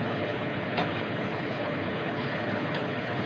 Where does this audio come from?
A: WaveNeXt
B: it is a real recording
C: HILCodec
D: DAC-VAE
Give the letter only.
C